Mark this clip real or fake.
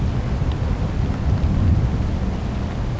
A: real